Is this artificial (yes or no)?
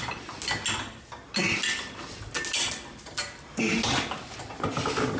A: no